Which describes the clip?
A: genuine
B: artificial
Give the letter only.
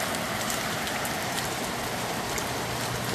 A